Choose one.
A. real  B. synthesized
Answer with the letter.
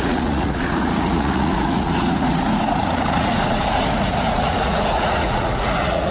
B